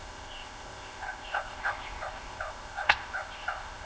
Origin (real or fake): fake